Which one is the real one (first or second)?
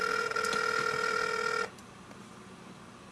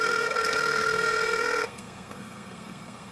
first